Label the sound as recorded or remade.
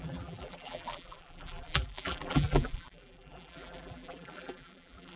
remade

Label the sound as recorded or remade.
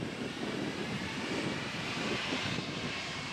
remade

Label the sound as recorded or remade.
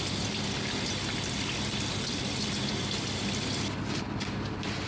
recorded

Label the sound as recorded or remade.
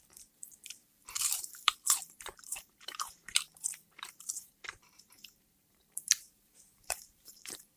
remade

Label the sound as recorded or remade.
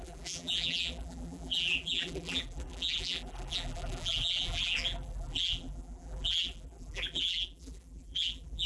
remade